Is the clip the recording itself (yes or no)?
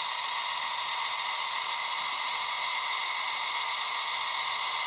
yes